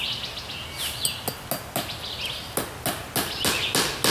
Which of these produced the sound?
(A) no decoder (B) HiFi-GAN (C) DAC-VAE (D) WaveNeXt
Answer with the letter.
A